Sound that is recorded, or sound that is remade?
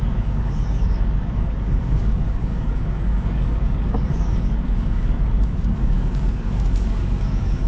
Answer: remade